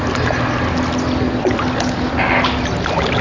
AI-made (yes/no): no